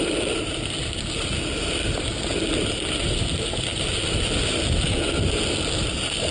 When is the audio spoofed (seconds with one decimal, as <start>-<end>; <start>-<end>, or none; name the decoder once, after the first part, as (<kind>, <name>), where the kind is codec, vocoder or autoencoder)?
none